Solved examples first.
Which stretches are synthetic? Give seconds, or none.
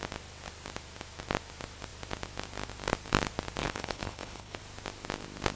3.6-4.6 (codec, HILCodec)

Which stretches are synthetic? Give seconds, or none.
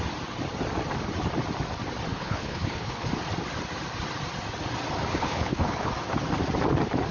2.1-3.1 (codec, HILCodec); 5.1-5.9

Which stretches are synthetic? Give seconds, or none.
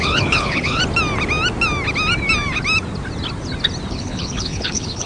0.0-0.8 (codec, HILCodec); 3.9-5.1